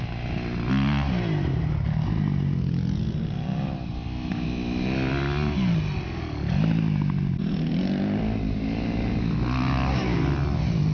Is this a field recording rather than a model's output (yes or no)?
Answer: yes